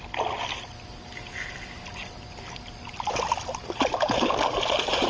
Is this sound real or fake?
real